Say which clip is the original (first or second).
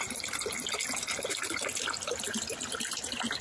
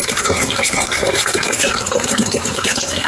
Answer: first